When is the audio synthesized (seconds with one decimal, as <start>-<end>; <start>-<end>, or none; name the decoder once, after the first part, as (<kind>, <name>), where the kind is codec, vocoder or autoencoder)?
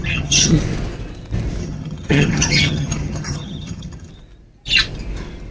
0.0-0.5 (vocoder, HiFi-GAN); 1.6-4.1